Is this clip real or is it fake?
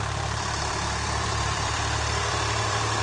fake